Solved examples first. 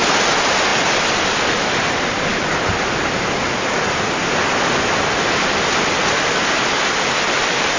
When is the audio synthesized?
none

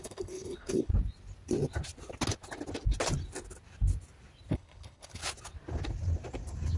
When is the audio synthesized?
0.0-0.9 (codec, HILCodec); 4.5-5.2

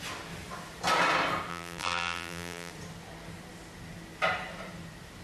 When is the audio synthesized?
1.5-2.7 (vocoder, BigVGAN v2)

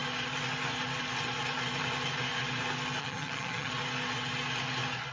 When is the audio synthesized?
3.0-3.7 (vocoder, HiFi-GAN)

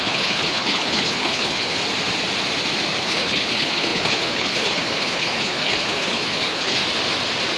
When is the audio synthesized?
0.0-1.8 (codec, HILCodec); 3.0-6.8

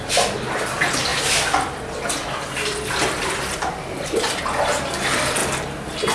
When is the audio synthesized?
none

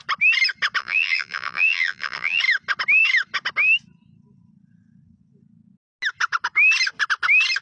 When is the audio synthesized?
0.8-2.4 (vocoder, BigVGAN v2)